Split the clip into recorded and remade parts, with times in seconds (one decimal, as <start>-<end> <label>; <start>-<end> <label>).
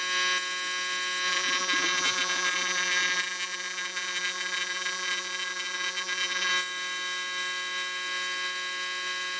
0.0-1.3 recorded; 1.3-6.5 remade; 6.5-9.4 recorded